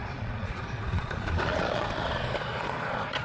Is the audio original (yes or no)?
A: no